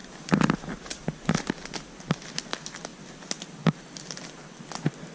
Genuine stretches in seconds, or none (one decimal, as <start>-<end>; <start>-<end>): 0.0-5.1